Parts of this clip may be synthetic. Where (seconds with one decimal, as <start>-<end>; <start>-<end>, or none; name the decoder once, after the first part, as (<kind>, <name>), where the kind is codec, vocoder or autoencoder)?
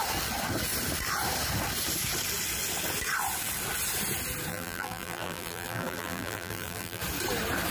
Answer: 4.5-7.0 (vocoder, BigVGAN v2)